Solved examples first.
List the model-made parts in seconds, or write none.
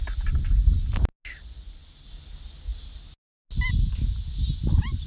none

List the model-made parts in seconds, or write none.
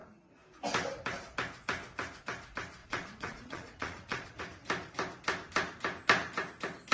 2.8-4.4 (vocoder, Vocos)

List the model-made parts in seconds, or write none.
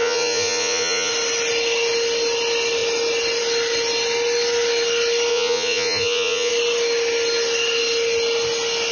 0.0-1.1 (vocoder, Vocos); 5.3-6.5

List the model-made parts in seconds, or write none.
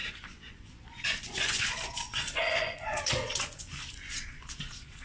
0.0-5.0 (vocoder, Vocos)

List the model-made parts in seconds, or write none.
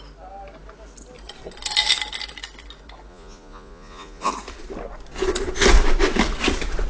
3.1-4.3 (vocoder, Vocos)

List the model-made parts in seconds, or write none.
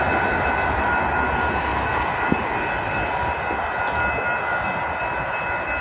none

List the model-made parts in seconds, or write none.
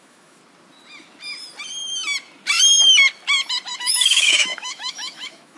0.0-0.4 (autoencoder, DAC-VAE); 3.8-5.6